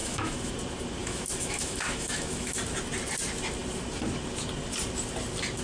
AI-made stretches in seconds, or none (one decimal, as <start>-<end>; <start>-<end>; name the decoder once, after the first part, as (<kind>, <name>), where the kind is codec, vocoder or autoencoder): 0.0-0.5 (autoencoder, DAC-VAE); 1.0-2.6